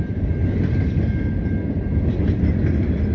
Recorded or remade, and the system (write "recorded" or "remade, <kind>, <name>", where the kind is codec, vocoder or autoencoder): recorded